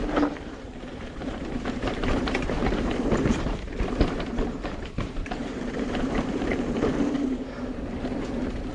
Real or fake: fake